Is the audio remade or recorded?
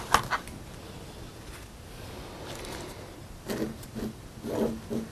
recorded